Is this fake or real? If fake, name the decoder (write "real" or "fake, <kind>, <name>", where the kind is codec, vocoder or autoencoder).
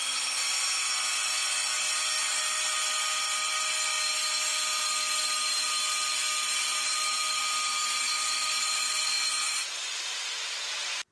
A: real